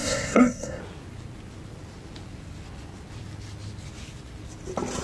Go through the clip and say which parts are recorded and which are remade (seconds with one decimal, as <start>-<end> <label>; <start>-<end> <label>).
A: 0.0-0.8 remade; 0.8-5.0 recorded